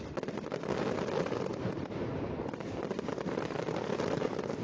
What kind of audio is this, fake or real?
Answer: real